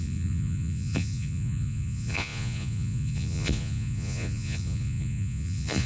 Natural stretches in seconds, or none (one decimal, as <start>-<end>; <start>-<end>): none